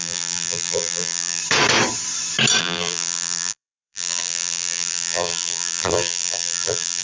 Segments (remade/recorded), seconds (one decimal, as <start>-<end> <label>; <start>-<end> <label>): 0.0-1.4 remade; 1.4-2.6 recorded; 2.6-7.0 remade